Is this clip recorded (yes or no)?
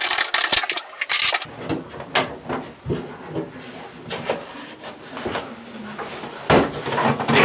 yes